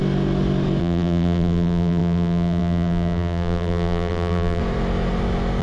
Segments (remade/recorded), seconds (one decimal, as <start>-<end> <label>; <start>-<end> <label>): 0.0-0.8 recorded; 0.8-4.6 remade; 4.6-5.6 recorded